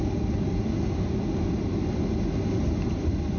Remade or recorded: recorded